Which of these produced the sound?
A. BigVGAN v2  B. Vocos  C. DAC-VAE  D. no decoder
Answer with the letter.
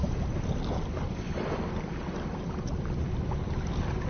A